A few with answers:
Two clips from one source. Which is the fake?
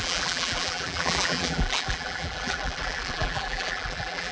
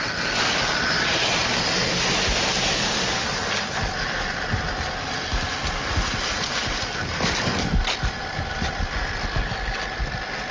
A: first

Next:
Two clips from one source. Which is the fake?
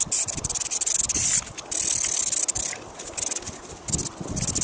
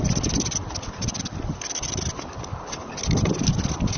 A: second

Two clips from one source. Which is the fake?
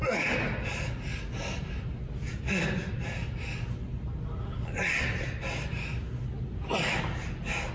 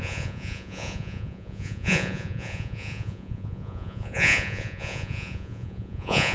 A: second